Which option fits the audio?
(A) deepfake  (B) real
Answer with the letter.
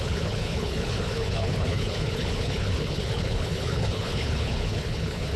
A